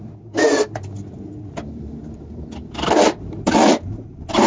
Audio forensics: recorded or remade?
recorded